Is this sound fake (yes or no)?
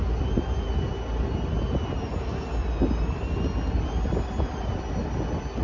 no